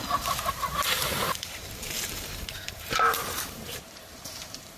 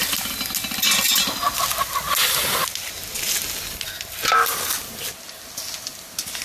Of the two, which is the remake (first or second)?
first